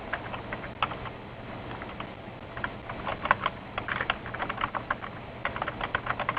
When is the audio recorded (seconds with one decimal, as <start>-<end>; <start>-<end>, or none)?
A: 0.0-3.1; 4.0-6.4